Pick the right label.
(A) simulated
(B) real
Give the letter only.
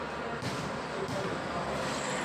B